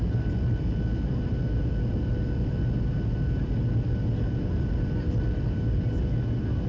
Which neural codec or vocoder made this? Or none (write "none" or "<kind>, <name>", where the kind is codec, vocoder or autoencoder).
none